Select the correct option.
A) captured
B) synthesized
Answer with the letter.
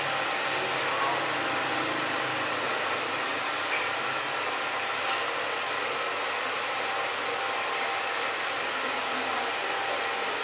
A